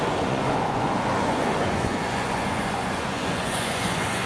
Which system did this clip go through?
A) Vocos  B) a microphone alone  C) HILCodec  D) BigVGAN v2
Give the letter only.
A